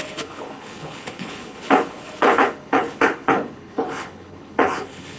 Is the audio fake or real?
fake